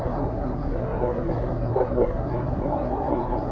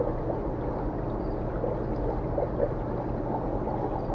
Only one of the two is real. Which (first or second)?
second